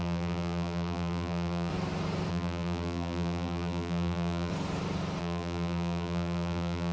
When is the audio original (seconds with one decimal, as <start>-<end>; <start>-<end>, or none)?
1.7-2.3; 4.5-5.2

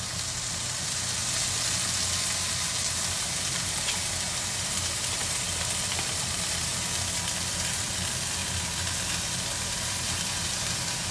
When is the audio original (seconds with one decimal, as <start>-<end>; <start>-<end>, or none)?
1.2-5.8; 6.7-7.5

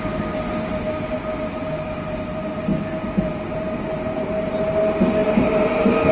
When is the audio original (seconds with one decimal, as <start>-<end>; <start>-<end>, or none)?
0.0-5.2

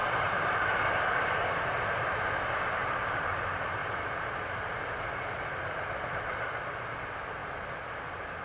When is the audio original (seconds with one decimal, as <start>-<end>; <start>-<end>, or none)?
0.6-8.4

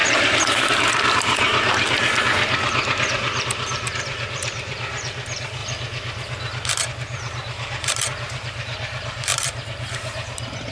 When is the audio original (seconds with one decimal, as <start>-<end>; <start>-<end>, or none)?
1.5-3.4; 5.6-6.8

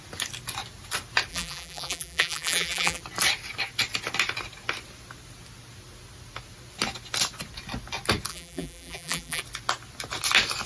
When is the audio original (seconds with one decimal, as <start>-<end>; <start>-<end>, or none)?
0.0-1.3; 3.0-8.3; 9.4-10.7

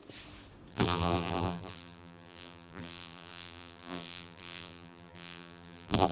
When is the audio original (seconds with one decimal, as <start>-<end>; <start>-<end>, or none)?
0.0-0.7

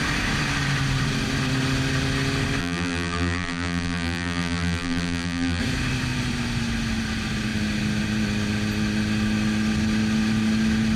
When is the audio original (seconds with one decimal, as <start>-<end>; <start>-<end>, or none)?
0.0-2.6; 5.6-11.0